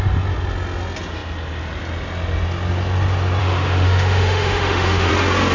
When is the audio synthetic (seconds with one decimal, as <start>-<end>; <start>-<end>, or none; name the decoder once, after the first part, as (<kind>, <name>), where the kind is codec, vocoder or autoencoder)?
3.4-5.1 (autoencoder, DAC-VAE)